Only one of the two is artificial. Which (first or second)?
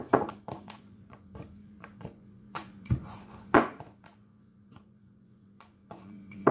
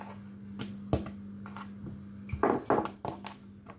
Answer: first